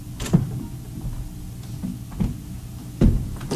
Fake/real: real